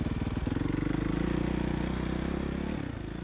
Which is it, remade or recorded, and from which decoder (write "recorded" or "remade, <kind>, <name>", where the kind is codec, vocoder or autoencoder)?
recorded